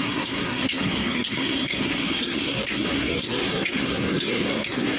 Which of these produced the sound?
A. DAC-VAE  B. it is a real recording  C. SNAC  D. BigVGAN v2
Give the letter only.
C